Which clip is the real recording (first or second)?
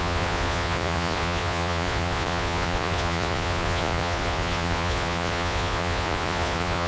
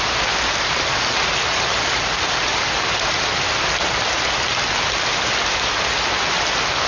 second